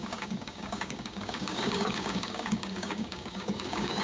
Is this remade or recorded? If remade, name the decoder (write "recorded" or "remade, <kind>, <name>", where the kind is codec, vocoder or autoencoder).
remade, codec, DAC